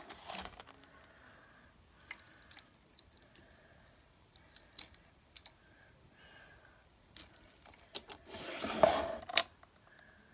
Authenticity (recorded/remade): recorded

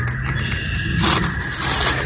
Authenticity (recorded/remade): recorded